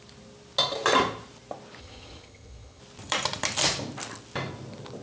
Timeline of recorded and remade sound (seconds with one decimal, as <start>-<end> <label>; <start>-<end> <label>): 0.0-1.8 recorded; 1.8-2.8 remade; 2.8-5.0 recorded